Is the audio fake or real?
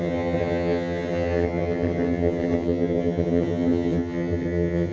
fake